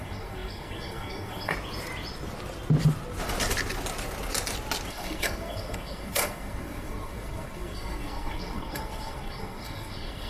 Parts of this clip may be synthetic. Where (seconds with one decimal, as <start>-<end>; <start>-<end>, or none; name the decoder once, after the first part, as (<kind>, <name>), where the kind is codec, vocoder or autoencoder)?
0.0-1.5 (codec, SNAC); 4.9-10.3